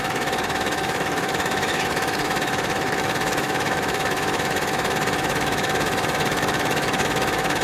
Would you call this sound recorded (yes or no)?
no